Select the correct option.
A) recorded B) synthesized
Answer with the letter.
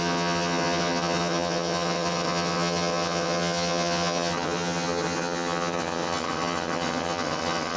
B